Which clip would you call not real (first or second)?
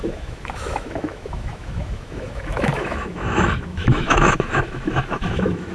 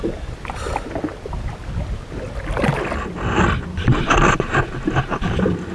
first